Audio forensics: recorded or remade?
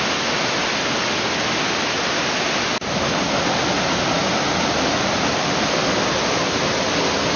recorded